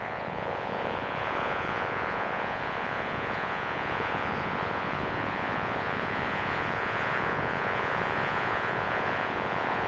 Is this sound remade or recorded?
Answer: remade